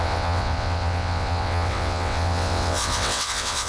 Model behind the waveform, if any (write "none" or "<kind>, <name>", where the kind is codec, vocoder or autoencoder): vocoder, WaveNeXt